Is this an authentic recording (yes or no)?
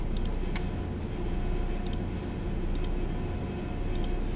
yes